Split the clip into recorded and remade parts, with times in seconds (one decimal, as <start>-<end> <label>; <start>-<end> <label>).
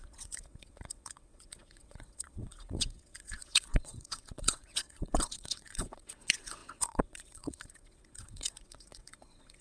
0.0-9.6 remade